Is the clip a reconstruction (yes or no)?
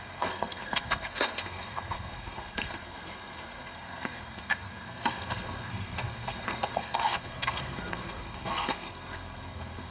yes